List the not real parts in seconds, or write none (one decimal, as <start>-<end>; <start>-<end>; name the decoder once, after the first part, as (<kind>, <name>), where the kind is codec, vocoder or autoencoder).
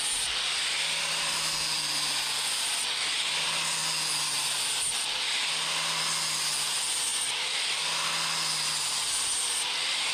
7.1-7.9 (vocoder, BigVGAN v2)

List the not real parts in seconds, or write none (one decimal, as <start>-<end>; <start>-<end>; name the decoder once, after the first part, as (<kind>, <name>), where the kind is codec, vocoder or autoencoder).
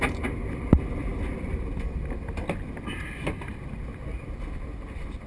none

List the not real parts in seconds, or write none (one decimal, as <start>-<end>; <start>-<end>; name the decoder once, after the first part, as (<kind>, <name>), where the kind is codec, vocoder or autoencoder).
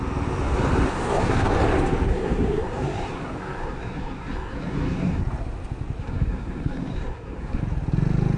0.9-1.5 (codec, SNAC); 2.1-5.2; 6.0-7.6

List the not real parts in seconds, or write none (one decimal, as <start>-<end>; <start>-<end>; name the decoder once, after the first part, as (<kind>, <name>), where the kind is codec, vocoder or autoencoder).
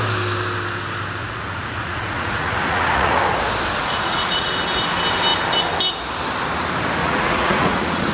1.2-3.2 (vocoder, Vocos); 3.8-4.5; 7.0-8.1